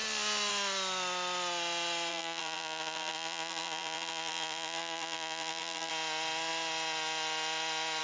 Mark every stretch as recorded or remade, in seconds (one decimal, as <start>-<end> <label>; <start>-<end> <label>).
0.0-2.1 recorded; 2.1-5.9 remade; 5.9-8.0 recorded